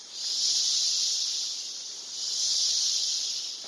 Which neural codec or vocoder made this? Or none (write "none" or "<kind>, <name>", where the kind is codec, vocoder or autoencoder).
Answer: vocoder, BigVGAN v2